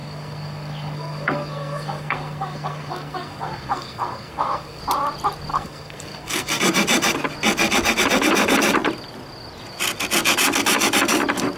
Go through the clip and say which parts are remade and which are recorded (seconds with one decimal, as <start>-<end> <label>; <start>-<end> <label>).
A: 0.0-4.8 remade; 4.8-5.5 recorded; 5.5-6.6 remade; 6.6-11.6 recorded